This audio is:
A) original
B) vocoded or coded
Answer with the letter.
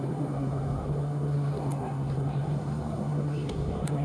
B